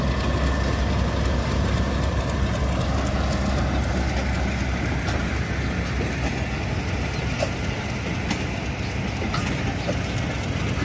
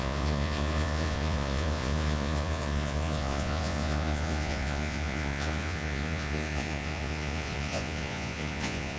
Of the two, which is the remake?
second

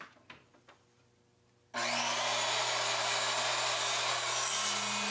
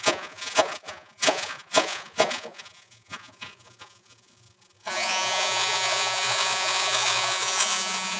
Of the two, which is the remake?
second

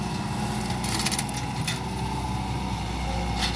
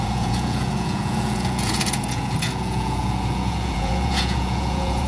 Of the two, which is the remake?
second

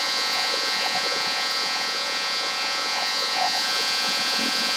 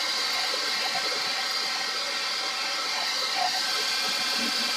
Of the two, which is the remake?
first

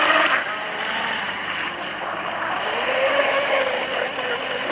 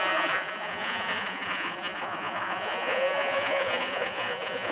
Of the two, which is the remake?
second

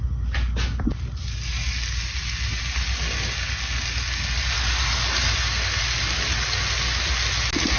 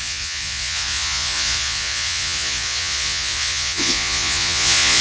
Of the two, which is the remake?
second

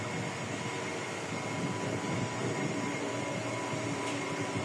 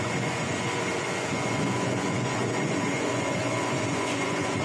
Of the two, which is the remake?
second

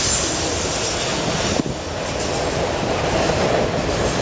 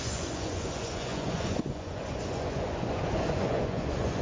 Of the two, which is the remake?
second